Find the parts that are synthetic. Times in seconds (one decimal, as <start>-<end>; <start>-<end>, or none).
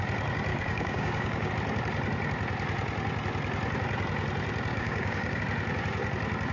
0.5-1.5; 4.7-5.4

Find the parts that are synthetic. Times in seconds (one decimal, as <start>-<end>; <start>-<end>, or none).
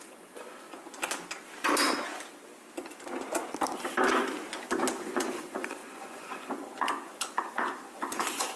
0.0-0.8; 5.0-8.6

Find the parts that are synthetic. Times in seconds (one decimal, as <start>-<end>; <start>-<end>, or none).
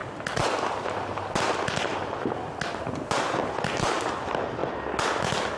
none